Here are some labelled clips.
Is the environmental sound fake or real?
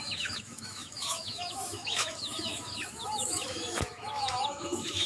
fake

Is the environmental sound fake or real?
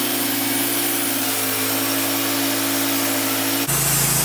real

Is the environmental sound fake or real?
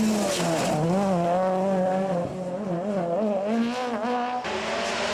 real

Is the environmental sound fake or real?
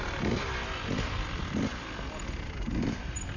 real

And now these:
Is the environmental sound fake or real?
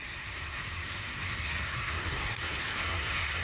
fake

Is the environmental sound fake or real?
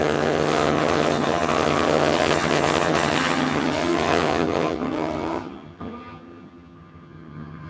fake